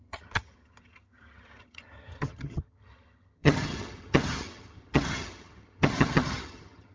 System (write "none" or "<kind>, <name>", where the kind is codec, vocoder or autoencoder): vocoder, HiFi-GAN